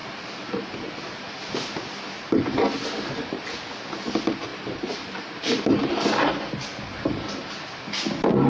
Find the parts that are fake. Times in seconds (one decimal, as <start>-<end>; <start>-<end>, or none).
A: 0.0-0.9; 4.5-5.9